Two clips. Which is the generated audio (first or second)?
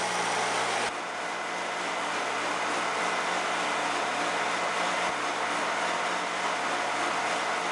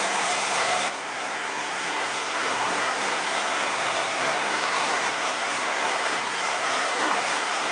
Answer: second